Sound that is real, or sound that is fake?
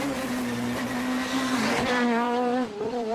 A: fake